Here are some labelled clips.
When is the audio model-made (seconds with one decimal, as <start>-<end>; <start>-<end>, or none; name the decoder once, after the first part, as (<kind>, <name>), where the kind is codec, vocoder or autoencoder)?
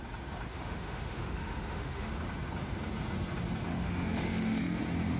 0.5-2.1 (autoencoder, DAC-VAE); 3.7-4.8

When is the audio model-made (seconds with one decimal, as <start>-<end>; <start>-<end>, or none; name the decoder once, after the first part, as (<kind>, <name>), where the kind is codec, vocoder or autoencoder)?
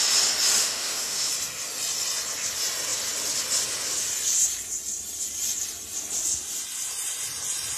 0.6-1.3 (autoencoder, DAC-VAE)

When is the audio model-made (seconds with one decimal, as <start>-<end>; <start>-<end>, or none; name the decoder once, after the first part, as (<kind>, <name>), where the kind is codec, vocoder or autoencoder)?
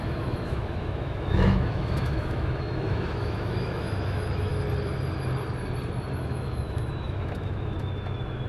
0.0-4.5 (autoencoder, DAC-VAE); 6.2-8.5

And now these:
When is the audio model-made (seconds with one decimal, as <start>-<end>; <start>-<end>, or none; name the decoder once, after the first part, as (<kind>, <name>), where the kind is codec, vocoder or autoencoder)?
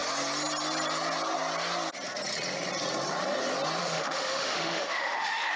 3.8-5.6 (autoencoder, DAC-VAE)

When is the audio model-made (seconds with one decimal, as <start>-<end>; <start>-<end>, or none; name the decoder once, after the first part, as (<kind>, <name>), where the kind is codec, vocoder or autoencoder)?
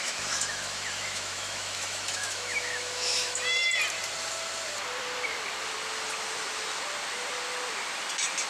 0.0-3.6 (autoencoder, DAC-VAE)